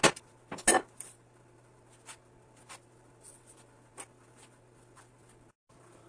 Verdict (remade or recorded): recorded